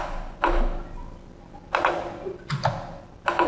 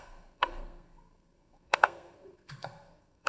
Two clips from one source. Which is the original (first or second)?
first